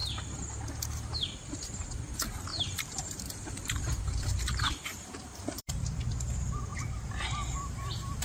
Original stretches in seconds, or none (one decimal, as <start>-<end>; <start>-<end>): 0.0-2.5; 5.8-8.2